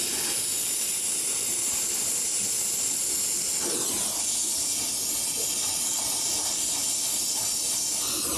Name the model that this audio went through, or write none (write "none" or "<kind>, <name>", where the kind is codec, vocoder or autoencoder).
none